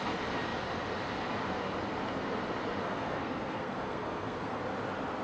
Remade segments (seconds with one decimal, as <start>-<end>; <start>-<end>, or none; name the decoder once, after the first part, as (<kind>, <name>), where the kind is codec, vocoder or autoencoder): 2.8-4.6 (codec, SNAC)

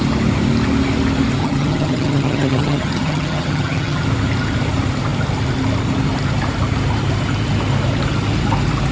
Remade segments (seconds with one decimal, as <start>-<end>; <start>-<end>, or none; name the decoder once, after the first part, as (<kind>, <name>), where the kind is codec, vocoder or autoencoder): 1.4-4.0 (vocoder, HiFi-GAN)